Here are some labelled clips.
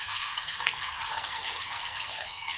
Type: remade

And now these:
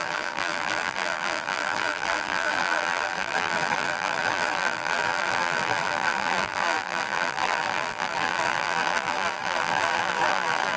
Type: remade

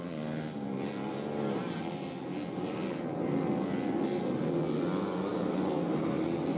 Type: recorded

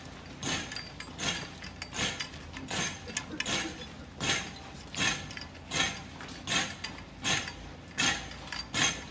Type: recorded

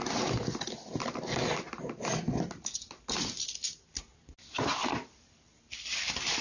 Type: recorded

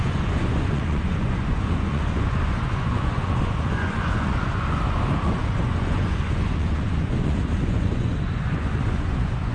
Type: remade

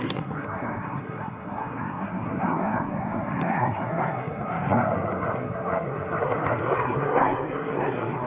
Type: remade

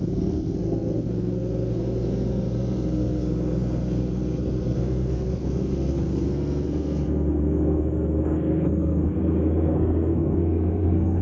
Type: remade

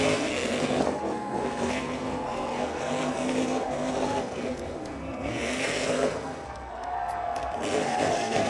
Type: remade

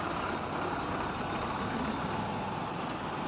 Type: recorded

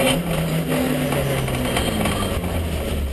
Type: recorded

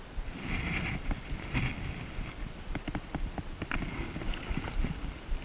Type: recorded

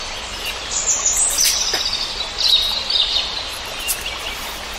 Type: recorded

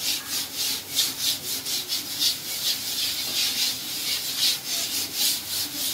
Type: recorded